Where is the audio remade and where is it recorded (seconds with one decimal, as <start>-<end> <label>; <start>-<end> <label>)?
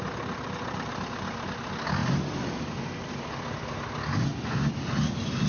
0.0-5.5 recorded